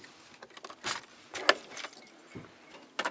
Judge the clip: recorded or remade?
recorded